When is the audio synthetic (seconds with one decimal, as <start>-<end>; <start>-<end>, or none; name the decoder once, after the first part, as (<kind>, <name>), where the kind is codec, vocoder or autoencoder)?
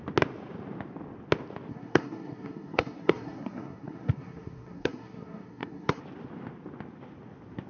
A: 1.7-6.0 (codec, SNAC)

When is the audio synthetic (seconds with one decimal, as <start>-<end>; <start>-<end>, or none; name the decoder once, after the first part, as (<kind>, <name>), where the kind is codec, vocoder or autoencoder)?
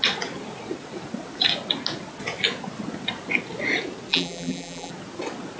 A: 4.1-4.9 (vocoder, BigVGAN v2)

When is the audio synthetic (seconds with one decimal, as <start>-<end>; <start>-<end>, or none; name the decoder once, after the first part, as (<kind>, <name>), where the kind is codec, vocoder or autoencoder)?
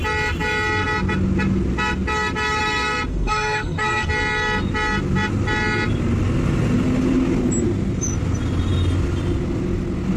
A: 3.1-4.1 (codec, SNAC)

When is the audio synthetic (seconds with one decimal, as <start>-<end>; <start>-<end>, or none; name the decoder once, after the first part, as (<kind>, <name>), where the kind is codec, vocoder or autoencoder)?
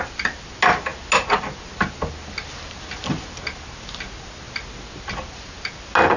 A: none